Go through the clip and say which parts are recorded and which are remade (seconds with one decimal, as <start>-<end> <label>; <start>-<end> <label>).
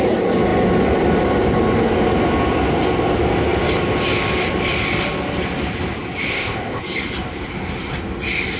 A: 0.0-6.3 recorded; 6.3-6.8 remade; 6.8-8.6 recorded